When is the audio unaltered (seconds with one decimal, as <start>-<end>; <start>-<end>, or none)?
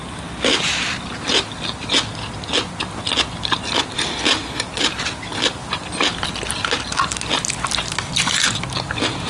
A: 0.0-9.3